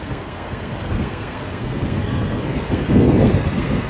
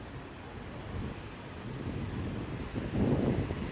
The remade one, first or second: first